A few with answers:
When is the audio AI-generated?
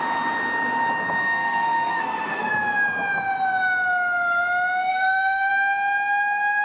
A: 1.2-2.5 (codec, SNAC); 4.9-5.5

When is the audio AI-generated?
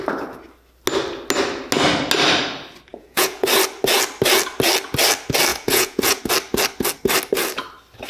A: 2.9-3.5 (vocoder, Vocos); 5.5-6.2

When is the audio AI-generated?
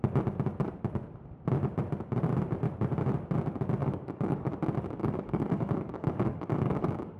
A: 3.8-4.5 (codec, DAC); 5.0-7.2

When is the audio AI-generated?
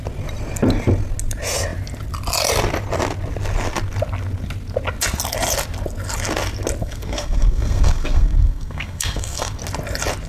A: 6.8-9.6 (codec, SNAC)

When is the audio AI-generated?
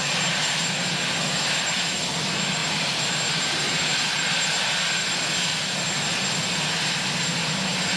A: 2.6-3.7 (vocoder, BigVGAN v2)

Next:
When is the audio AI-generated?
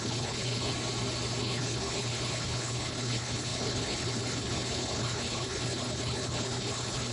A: 0.0-0.7 (codec, HILCodec); 1.4-7.1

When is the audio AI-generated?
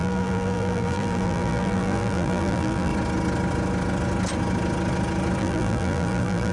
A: 0.0-2.9 (vocoder, BigVGAN v2); 5.4-6.5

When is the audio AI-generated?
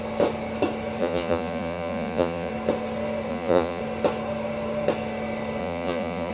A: 1.0-2.5 (vocoder, Vocos); 3.3-3.8; 5.6-6.3